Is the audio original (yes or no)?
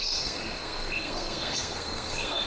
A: no